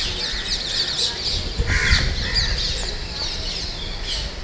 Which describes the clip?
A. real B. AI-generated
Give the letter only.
A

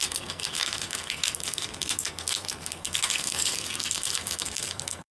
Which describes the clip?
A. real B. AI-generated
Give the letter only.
B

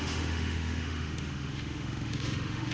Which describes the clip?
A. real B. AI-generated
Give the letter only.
B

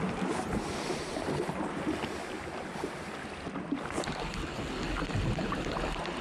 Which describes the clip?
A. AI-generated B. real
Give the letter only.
B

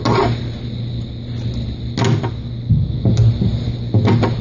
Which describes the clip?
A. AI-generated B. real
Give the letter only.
B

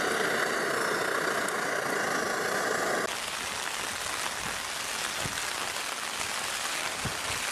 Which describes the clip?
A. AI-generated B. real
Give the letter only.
B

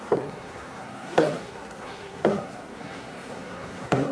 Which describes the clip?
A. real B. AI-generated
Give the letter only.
B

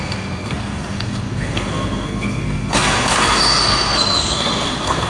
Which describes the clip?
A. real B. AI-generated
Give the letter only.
B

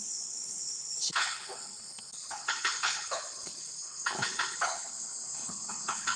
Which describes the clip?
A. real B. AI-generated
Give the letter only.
B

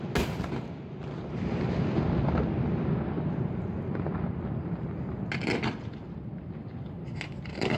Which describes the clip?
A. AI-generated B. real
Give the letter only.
B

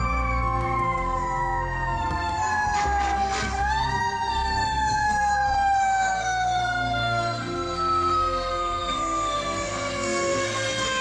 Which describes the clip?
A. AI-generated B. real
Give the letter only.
A